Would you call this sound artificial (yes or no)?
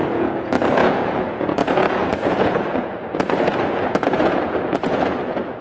yes